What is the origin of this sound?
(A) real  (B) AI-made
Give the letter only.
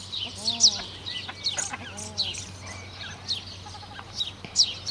A